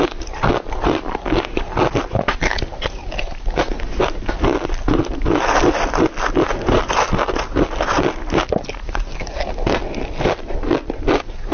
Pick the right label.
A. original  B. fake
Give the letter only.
A